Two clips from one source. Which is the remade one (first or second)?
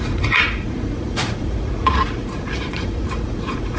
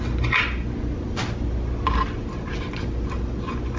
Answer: first